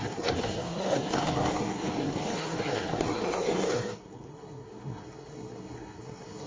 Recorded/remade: remade